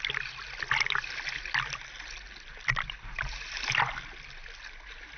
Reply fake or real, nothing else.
real